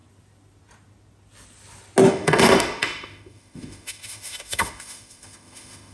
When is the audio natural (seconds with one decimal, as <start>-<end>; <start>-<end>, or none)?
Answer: 0.0-2.1